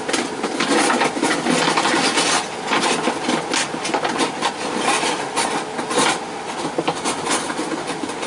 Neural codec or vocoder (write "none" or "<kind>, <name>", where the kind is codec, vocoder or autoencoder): none